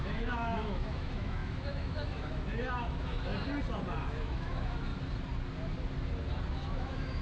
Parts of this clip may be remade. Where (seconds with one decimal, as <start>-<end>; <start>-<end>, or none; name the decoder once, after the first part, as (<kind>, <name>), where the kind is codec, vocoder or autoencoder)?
0.0-3.3 (autoencoder, DAC-VAE); 4.1-4.9; 6.5-7.2

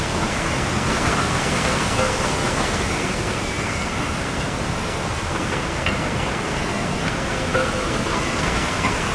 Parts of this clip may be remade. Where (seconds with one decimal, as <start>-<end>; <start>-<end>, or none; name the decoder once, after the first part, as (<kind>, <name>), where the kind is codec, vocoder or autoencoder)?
0.0-9.1 (codec, SNAC)

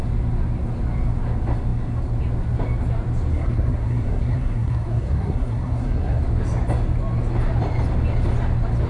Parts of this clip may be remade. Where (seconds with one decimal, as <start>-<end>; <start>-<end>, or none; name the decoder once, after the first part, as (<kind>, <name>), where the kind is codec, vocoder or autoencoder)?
3.3-6.2 (codec, SNAC)

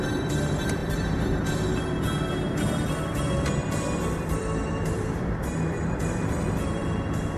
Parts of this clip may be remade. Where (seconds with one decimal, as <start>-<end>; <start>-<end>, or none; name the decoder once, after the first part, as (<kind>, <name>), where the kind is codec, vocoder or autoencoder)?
0.0-7.4 (vocoder, BigVGAN v2)

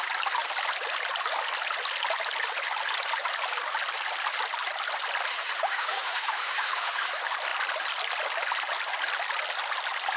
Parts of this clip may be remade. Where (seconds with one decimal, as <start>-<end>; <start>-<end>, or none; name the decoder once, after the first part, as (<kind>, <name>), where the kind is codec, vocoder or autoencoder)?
5.3-7.1 (autoencoder, DAC-VAE)

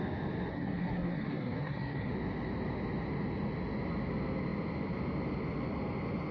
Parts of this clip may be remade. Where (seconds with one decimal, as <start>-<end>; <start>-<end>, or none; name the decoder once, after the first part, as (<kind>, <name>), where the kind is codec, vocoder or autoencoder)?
0.5-2.1 (codec, SNAC)